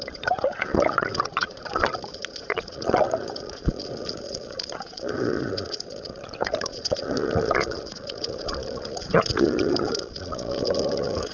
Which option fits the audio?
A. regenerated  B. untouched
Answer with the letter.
A